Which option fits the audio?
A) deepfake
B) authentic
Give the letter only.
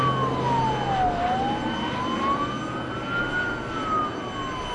B